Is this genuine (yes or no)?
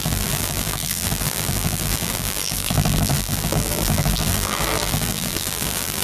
no